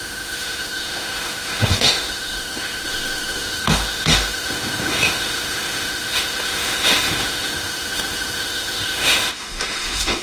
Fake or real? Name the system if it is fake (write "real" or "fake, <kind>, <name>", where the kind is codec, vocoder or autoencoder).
fake, autoencoder, DAC-VAE